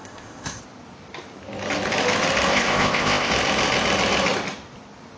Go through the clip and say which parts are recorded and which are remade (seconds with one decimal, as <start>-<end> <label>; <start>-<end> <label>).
0.0-0.6 remade; 0.6-2.5 recorded; 2.5-3.3 remade; 3.3-5.2 recorded